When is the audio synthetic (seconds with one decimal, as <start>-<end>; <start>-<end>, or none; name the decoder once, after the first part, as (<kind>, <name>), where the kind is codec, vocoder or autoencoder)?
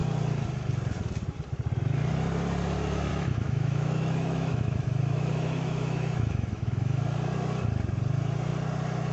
3.1-7.0 (autoencoder, DAC-VAE)